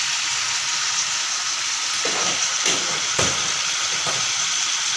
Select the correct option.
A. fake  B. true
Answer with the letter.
B